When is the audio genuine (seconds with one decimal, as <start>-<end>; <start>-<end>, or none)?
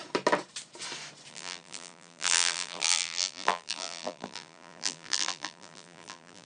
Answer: 0.0-1.3